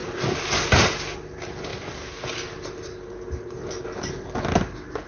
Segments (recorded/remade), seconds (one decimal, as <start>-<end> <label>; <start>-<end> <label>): 0.0-0.5 remade; 0.5-5.1 recorded